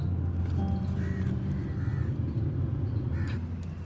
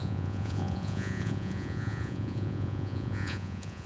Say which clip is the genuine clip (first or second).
first